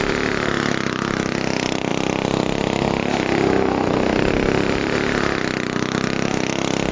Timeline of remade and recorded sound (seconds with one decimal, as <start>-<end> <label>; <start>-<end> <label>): 0.0-6.9 recorded